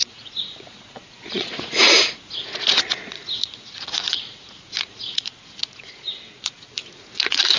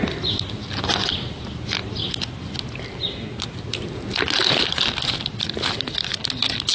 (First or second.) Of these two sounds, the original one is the second